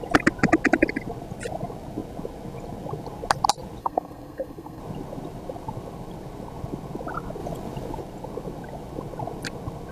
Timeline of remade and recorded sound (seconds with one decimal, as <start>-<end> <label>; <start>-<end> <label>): 0.0-3.8 recorded; 3.8-4.8 remade; 4.8-9.9 recorded